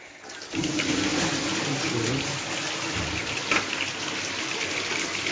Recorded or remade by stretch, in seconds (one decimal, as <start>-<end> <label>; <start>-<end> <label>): 0.0-5.3 recorded